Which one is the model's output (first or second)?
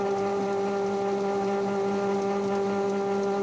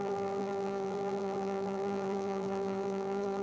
second